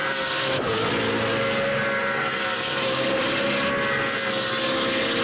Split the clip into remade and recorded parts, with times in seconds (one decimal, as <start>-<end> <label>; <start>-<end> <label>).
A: 0.0-0.9 remade; 0.9-2.0 recorded; 2.0-3.2 remade; 3.2-5.2 recorded